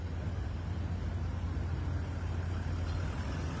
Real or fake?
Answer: real